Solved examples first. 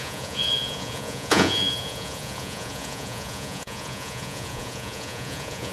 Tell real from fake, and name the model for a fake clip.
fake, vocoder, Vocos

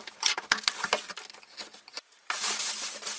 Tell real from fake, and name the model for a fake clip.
real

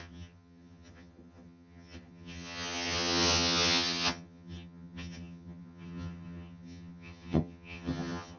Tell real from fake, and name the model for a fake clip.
fake, vocoder, HiFi-GAN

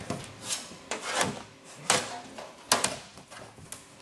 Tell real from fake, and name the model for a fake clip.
real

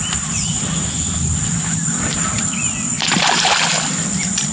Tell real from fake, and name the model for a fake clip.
real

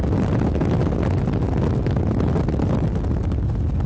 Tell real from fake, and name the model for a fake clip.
real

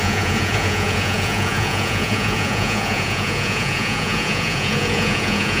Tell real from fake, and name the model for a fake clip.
fake, vocoder, Vocos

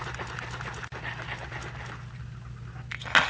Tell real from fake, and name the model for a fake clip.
real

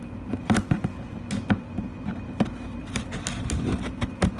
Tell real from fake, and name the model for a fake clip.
real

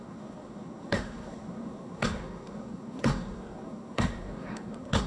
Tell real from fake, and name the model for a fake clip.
fake, codec, SNAC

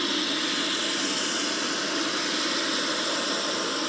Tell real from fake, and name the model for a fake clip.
real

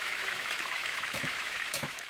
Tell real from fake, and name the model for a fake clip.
fake, autoencoder, DAC-VAE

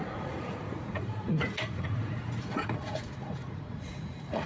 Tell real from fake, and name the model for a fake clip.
fake, vocoder, Vocos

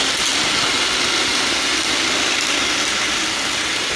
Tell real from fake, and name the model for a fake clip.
real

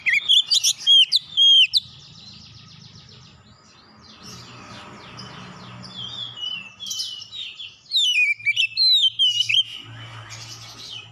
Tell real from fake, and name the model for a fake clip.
real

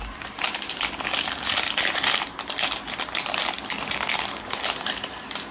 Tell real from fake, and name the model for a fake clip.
real